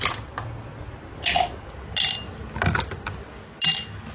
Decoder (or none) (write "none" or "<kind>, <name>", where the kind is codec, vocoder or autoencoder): none